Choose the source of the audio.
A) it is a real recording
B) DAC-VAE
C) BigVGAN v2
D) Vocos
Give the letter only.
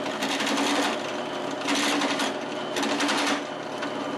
A